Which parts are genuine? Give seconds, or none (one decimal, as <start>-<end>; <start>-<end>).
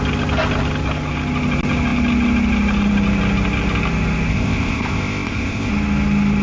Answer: 0.0-4.3; 5.7-6.4